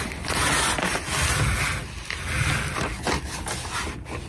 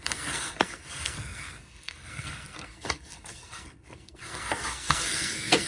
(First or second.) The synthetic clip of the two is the second